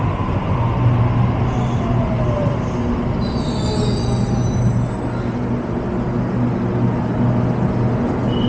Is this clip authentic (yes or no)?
yes